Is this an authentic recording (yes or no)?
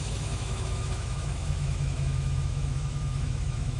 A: no